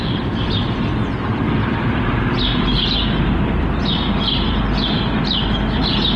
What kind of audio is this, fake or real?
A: real